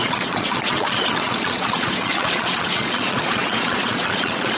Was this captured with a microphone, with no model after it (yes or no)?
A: no